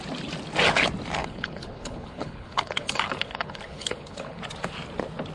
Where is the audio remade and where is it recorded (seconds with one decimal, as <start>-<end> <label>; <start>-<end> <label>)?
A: 0.0-1.2 recorded; 1.2-4.4 remade; 4.4-5.3 recorded